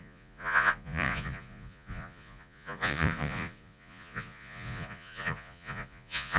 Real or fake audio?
fake